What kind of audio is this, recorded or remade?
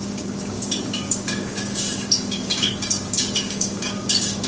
remade